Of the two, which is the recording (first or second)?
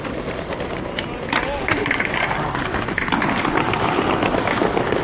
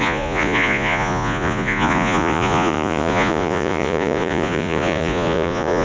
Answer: first